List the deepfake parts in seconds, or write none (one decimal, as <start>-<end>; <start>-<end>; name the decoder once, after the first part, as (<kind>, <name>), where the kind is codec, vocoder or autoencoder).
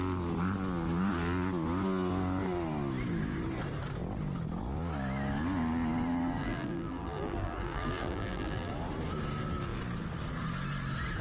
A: 6.4-8.7 (vocoder, BigVGAN v2)